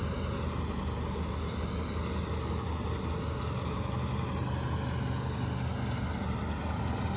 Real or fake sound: real